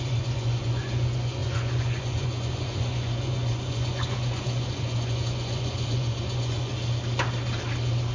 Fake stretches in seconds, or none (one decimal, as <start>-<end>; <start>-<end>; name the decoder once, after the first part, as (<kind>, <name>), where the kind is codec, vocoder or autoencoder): 0.0-6.7 (vocoder, Vocos)